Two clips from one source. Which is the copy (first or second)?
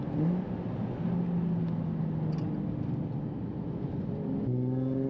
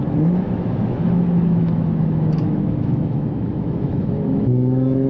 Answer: second